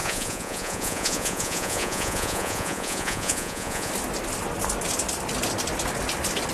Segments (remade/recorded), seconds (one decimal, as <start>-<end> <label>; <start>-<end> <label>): 0.0-3.9 remade; 3.9-6.5 recorded

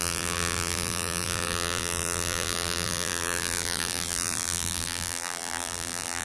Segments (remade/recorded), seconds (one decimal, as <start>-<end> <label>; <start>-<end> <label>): 0.0-6.2 remade